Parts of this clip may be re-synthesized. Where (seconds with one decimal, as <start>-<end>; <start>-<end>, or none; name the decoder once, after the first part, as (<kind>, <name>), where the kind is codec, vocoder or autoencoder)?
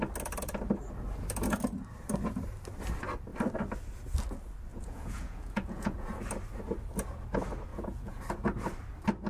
4.7-6.2 (vocoder, Vocos); 7.7-8.2